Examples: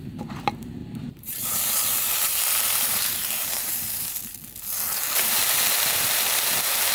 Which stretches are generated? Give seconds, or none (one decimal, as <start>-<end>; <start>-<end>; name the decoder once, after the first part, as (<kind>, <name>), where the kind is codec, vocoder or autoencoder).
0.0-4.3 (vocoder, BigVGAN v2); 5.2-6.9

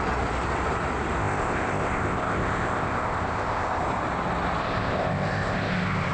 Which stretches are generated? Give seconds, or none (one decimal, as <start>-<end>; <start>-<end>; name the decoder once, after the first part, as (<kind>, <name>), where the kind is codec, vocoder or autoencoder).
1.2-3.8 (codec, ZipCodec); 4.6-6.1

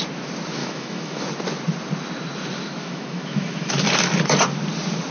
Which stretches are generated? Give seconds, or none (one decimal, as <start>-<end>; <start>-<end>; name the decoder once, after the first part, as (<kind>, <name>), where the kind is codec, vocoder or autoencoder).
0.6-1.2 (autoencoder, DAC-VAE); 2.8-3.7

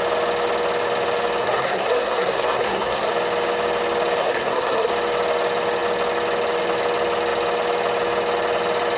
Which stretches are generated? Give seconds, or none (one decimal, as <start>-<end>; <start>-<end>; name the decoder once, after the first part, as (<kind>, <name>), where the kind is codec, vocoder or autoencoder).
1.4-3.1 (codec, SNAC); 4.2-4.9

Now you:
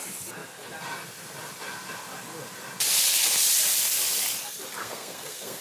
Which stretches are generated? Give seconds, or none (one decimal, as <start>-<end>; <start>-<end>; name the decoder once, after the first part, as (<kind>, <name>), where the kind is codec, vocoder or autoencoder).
4.8-5.6 (codec, SNAC)

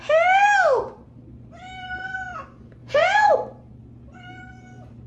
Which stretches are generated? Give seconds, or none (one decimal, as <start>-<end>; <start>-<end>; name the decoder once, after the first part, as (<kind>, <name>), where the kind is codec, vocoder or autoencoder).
2.8-3.3 (vocoder, Vocos)

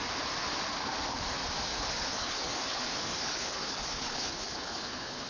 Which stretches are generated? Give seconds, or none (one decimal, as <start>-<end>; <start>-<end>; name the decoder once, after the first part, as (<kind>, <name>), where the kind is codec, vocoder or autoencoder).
1.7-5.3 (codec, HILCodec)